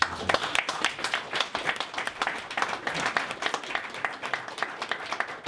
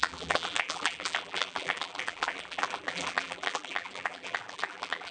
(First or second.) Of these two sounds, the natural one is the first